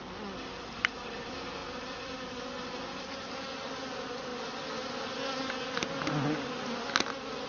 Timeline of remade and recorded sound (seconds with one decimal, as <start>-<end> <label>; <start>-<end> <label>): 0.0-7.5 recorded